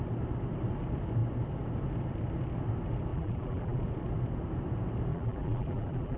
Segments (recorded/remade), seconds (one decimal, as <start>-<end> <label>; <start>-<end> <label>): 0.0-3.1 recorded; 3.1-3.8 remade; 3.8-5.1 recorded; 5.1-6.2 remade